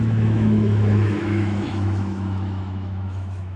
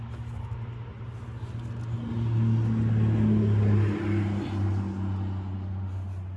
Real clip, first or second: second